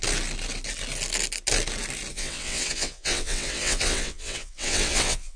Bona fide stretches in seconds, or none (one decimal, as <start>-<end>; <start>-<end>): 0.0-2.1